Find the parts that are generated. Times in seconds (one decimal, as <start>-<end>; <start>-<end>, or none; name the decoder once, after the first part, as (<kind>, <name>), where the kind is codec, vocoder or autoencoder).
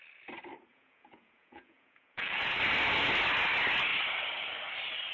0.7-2.6 (vocoder, Vocos)